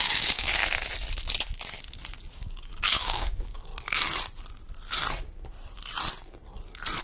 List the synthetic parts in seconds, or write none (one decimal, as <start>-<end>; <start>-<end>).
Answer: 0.0-0.6; 2.3-3.7